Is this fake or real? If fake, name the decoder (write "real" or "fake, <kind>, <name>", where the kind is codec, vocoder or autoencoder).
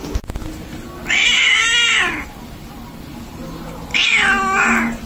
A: real